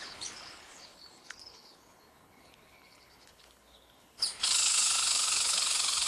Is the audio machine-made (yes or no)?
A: yes